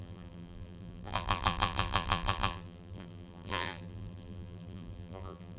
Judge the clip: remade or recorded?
remade